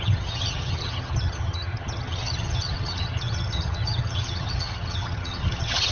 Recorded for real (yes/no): no